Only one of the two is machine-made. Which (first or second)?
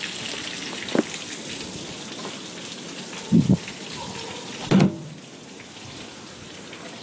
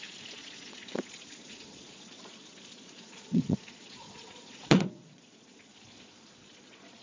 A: second